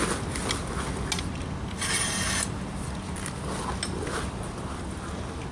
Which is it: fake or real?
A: real